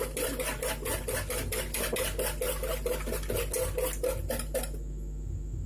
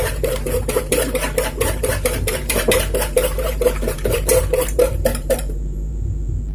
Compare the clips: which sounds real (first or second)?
first